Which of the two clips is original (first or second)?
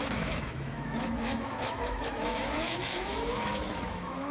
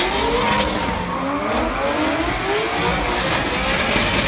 second